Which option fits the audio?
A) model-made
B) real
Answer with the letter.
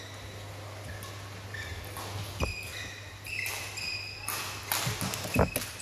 B